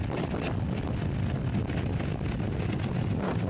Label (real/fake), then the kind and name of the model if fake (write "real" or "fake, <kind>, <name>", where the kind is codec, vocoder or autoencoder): real